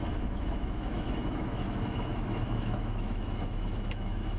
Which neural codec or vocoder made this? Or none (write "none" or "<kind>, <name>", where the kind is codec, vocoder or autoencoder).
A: autoencoder, DAC-VAE